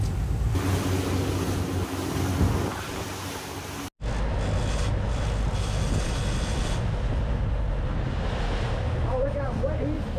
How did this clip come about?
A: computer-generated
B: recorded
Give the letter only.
B